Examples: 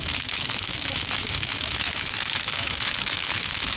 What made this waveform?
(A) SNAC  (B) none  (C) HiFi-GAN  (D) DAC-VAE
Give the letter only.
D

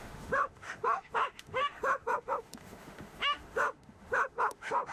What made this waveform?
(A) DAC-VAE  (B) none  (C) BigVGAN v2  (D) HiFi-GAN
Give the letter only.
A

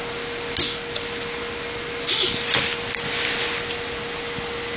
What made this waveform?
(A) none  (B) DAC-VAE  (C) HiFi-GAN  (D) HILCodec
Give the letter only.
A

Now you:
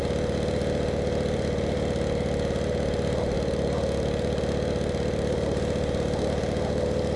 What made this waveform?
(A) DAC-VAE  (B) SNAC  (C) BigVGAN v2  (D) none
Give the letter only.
D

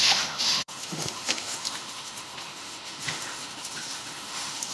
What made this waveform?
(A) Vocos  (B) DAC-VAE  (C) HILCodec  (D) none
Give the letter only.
B